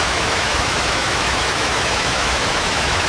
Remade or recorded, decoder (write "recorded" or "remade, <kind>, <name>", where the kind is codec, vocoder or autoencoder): remade, autoencoder, DAC-VAE